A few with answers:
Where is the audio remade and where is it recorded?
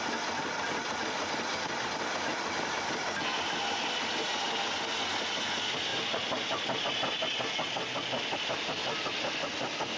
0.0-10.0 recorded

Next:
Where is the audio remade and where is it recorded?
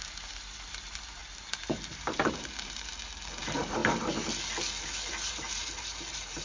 0.0-2.9 remade; 2.9-3.4 recorded; 3.4-3.8 remade; 3.8-5.1 recorded; 5.1-6.4 remade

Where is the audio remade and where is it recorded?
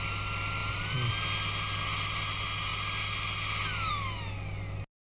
0.0-0.6 recorded; 0.6-1.1 remade; 1.1-5.0 recorded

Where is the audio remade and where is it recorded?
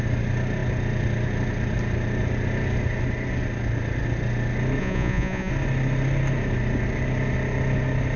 0.0-4.8 recorded; 4.8-5.5 remade; 5.5-8.2 recorded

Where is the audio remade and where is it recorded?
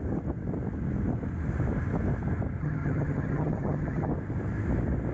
0.0-2.6 recorded; 2.6-4.1 remade; 4.1-5.1 recorded